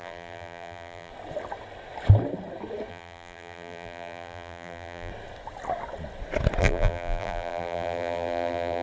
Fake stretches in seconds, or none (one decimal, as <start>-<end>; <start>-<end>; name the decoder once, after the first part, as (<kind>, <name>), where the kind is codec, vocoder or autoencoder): 0.0-1.1 (vocoder, BigVGAN v2); 2.9-5.1; 6.6-8.8